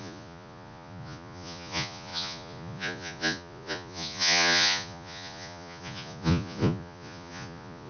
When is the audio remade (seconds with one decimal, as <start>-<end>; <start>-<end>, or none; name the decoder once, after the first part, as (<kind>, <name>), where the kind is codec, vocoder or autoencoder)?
0.0-7.9 (vocoder, Vocos)